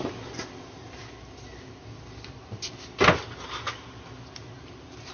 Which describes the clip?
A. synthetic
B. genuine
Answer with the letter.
B